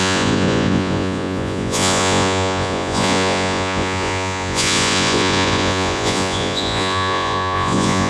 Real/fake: fake